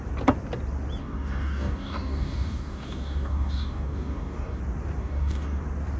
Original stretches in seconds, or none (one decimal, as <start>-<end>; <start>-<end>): 0.0-1.0; 4.6-5.0; 5.6-6.0